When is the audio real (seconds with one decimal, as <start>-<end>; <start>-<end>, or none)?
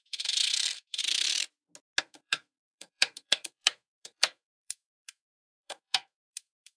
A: 1.0-2.0